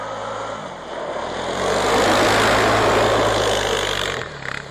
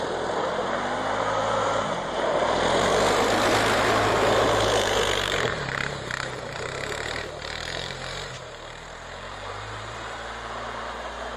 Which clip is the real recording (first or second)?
first